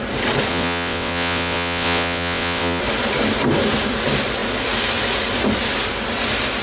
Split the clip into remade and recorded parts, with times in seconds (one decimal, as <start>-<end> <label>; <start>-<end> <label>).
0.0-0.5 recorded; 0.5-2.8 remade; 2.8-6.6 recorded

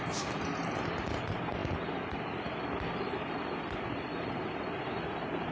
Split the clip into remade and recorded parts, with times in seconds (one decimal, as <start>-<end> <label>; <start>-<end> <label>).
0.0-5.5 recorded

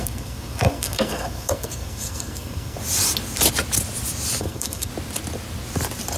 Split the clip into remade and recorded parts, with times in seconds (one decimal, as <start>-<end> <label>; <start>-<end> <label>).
0.0-2.8 remade; 2.8-4.4 recorded; 4.4-4.9 remade; 4.9-6.2 recorded

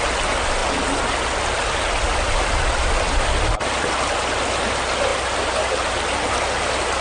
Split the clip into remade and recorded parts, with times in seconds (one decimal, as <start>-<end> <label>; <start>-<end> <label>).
0.0-7.0 recorded

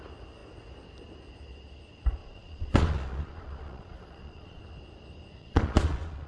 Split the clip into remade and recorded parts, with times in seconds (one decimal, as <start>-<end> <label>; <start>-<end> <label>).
0.0-2.2 recorded; 2.2-4.6 remade; 4.6-5.4 recorded; 5.4-6.3 remade